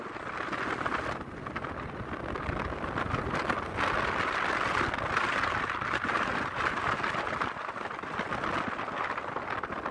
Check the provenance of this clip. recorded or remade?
recorded